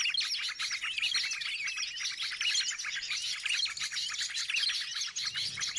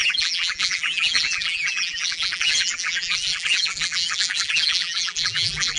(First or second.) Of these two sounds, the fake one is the second